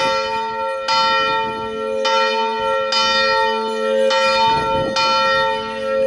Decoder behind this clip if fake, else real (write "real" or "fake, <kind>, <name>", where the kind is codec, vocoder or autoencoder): real